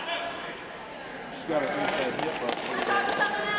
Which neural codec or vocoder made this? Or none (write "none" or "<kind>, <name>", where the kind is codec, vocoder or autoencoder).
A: none